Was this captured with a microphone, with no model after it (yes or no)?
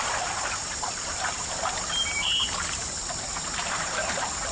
no